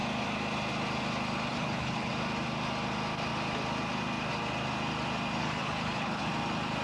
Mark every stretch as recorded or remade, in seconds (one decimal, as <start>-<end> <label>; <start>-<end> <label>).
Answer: 0.0-1.5 recorded; 1.5-2.1 remade; 2.1-5.4 recorded; 5.4-6.3 remade; 6.3-6.8 recorded